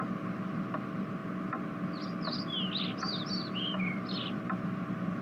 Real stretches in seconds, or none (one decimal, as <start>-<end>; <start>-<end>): 1.2-3.7